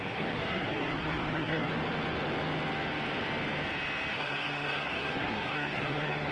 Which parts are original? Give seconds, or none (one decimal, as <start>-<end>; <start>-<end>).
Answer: 1.7-4.1